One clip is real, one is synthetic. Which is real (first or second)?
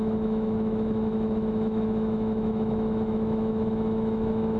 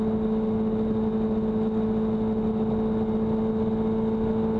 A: second